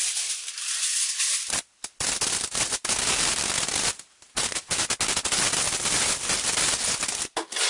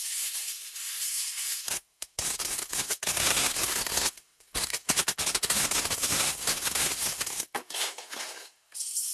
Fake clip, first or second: second